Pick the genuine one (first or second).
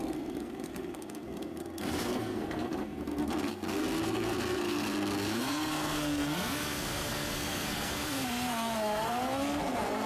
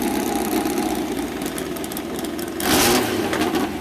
second